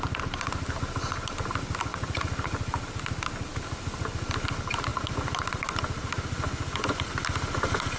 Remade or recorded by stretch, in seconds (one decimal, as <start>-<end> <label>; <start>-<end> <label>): 0.0-8.0 recorded